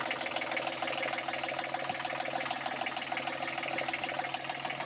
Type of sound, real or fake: real